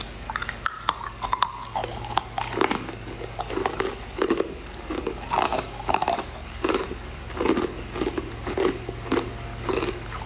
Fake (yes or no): yes